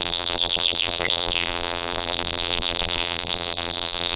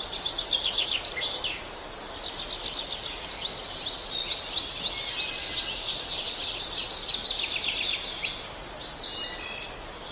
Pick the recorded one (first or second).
second